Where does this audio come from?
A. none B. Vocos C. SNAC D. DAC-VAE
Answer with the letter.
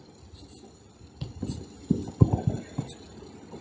A